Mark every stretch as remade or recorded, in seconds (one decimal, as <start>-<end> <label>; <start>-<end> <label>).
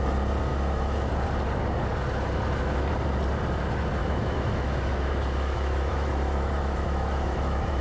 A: 0.0-0.5 recorded; 0.5-1.1 remade; 1.1-4.0 recorded; 4.0-7.8 remade